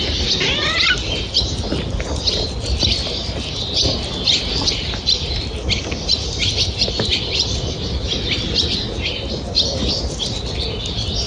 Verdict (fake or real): real